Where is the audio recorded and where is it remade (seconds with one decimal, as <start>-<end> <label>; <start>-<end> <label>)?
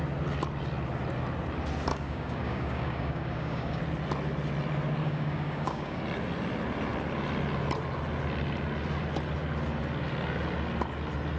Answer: 0.0-1.9 recorded; 1.9-3.8 remade; 3.8-5.0 recorded; 5.0-6.0 remade; 6.0-11.4 recorded